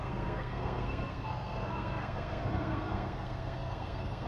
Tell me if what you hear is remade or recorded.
remade